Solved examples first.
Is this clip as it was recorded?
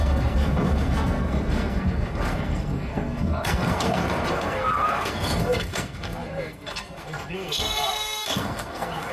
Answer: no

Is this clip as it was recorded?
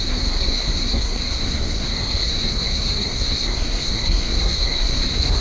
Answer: no